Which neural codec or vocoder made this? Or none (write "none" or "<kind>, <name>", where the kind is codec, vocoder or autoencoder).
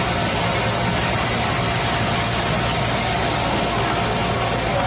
none